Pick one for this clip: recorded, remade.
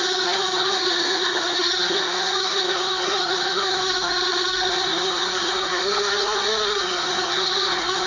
remade